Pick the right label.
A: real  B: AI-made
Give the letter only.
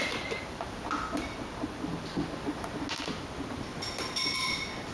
A